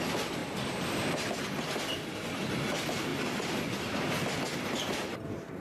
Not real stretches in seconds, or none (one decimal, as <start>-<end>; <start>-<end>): 0.4-1.4; 3.1-3.8